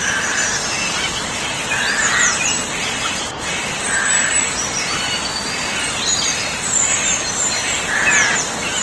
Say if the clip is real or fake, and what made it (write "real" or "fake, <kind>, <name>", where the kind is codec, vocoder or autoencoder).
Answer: real